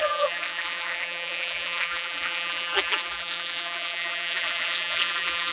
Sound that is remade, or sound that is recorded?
remade